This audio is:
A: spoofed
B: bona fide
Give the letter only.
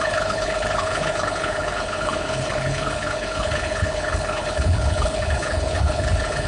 A